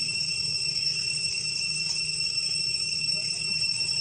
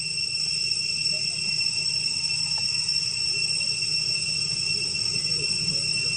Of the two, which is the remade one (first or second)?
first